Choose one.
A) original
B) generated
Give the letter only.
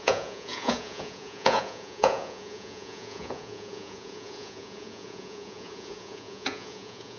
B